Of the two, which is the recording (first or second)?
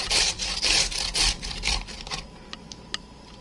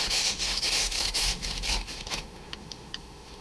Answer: first